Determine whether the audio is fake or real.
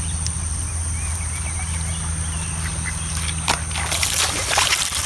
real